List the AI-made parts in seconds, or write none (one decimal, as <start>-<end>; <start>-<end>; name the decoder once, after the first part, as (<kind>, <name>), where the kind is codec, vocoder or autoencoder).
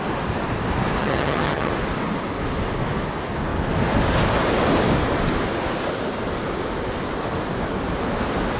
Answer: 1.0-1.7 (vocoder, HiFi-GAN)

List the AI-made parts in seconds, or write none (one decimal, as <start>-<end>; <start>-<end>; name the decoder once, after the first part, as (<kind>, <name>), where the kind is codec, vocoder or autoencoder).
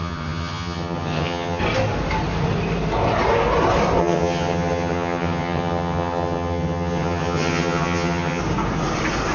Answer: 0.0-1.6 (vocoder, HiFi-GAN); 4.0-8.4